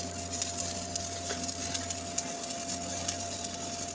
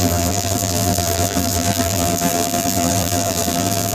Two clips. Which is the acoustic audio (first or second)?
first